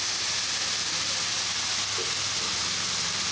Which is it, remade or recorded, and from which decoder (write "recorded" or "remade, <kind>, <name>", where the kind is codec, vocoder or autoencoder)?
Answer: recorded